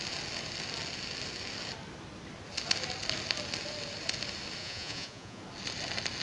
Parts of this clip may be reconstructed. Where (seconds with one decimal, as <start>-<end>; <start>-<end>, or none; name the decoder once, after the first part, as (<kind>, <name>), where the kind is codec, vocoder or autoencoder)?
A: 4.6-5.4 (vocoder, Vocos)